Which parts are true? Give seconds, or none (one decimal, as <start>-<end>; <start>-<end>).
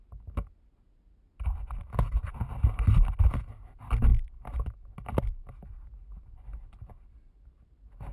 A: 0.0-8.1